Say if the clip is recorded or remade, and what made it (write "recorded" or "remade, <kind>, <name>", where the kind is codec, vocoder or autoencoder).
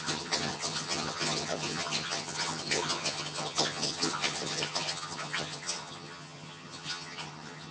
remade, vocoder, HiFi-GAN